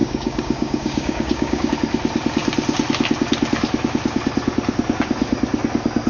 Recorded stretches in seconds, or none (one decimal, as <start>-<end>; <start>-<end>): 1.7-6.1